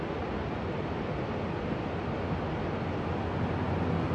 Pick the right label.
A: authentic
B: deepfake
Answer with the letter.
A